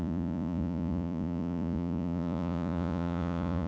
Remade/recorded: remade